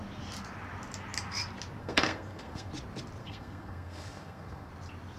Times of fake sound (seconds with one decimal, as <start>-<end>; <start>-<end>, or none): 1.8-2.7; 3.2-4.7